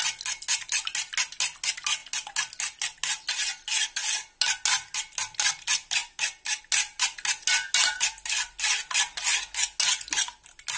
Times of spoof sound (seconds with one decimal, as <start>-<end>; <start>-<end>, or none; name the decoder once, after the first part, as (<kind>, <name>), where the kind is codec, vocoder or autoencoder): none